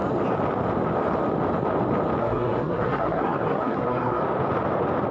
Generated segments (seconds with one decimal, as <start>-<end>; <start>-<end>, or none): 2.2-4.2